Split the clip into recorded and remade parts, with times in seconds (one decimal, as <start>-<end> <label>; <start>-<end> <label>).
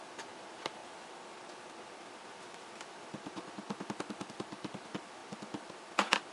0.0-0.8 remade; 0.8-2.6 recorded; 2.6-6.3 remade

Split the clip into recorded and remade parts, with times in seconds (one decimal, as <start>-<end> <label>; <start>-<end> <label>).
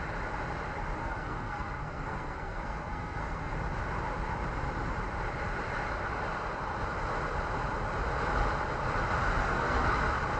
0.0-1.0 recorded; 1.0-3.5 remade; 3.5-9.4 recorded; 9.4-9.9 remade; 9.9-10.4 recorded